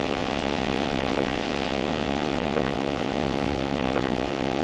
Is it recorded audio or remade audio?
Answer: remade